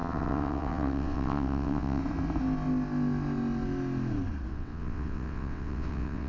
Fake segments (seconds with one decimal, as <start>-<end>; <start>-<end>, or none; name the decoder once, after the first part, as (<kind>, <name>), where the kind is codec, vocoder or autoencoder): 0.0-2.0 (vocoder, WaveNeXt); 4.5-6.3